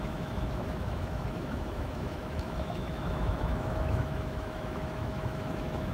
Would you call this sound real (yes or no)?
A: no